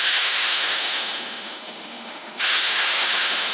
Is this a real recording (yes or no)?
no